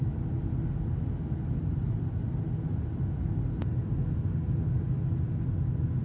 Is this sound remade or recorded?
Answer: recorded